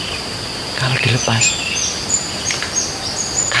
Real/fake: real